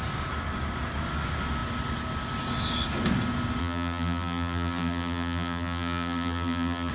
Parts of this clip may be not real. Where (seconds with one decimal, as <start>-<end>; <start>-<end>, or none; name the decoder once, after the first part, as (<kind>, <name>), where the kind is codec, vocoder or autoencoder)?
3.6-6.9 (vocoder, BigVGAN v2)